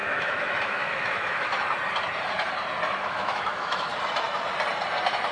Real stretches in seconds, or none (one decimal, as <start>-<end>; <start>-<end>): 1.5-3.0; 3.9-5.3